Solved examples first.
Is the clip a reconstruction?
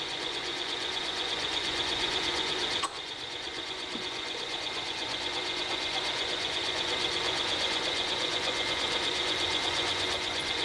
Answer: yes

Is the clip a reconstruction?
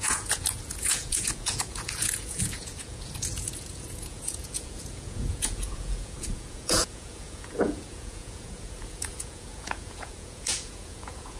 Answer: yes